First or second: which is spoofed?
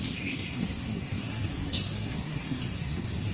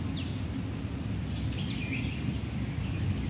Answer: first